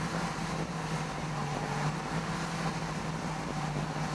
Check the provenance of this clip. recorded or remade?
recorded